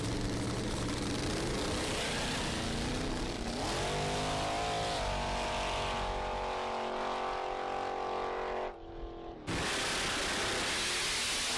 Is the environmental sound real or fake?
real